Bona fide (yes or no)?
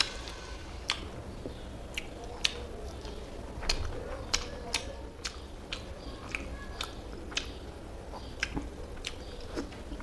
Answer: yes